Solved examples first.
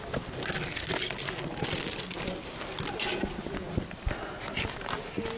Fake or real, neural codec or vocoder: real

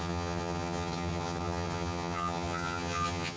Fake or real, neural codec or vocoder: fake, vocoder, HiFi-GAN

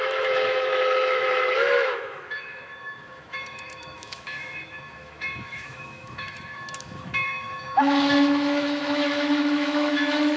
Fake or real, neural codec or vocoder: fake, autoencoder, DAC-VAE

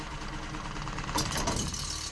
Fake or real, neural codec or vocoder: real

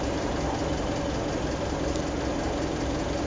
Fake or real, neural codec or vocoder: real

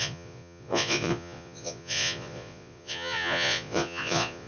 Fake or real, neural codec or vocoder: fake, vocoder, Vocos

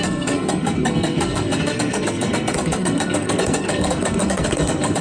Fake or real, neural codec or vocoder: fake, codec, SNAC